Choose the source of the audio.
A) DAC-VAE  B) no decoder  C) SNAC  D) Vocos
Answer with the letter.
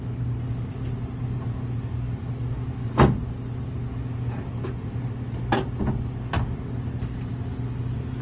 B